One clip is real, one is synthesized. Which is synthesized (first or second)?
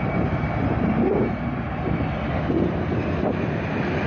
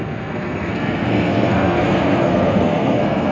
second